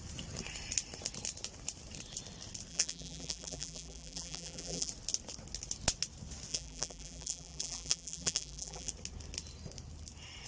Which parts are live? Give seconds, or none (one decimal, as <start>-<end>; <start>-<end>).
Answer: 0.0-2.7; 4.9-6.5; 8.9-10.5